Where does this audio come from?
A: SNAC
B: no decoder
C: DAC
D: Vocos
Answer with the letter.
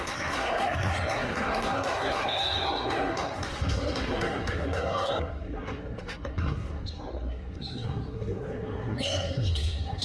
A